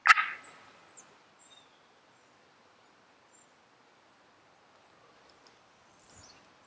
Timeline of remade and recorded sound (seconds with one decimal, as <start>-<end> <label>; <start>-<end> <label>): 0.0-6.7 recorded